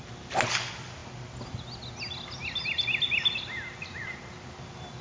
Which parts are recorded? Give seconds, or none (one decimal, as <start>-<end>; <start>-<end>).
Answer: 0.0-5.0